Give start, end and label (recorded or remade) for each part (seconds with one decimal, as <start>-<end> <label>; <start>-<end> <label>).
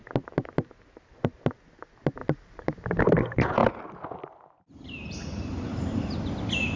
0.0-6.8 recorded